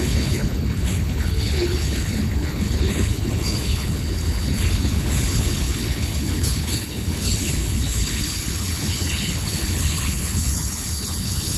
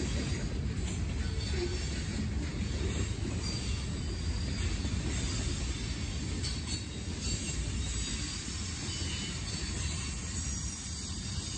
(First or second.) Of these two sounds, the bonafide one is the second